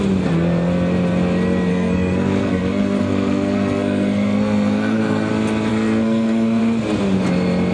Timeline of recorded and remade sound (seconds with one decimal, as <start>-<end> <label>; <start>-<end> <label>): 0.0-1.7 recorded; 1.7-5.3 remade; 5.3-5.7 recorded; 5.7-6.6 remade; 6.6-7.7 recorded

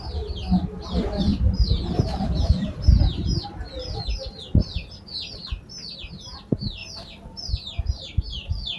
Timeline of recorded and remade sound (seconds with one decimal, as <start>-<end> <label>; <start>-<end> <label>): 0.0-1.3 recorded; 1.3-3.0 remade; 3.0-8.8 recorded

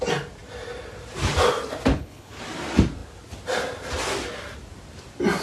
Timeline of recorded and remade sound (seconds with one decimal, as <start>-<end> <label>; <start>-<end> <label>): 0.0-1.9 recorded; 1.9-2.4 remade; 2.4-5.4 recorded

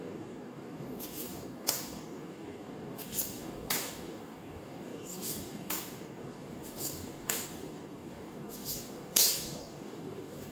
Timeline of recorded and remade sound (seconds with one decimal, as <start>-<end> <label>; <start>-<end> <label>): 0.0-10.5 remade